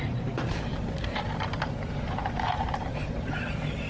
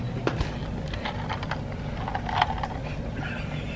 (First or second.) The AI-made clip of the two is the first